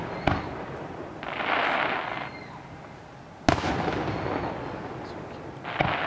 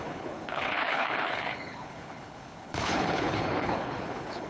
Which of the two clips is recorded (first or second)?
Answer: first